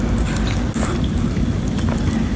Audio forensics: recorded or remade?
recorded